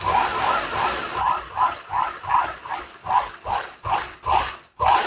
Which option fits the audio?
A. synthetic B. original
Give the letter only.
B